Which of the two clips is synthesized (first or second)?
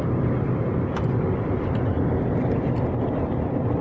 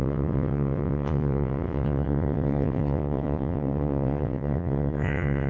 second